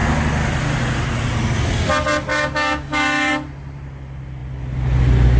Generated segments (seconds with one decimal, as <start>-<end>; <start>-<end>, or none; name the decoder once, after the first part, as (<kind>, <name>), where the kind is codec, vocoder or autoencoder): 2.3-3.3 (codec, DAC)